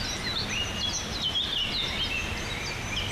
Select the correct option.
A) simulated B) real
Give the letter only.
B